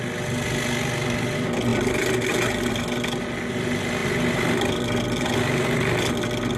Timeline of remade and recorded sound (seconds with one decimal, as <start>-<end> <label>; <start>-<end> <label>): 0.0-6.6 recorded